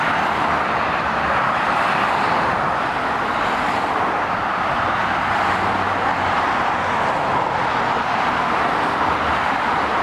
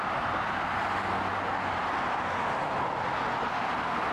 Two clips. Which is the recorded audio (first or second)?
second